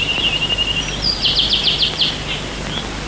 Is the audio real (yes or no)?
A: yes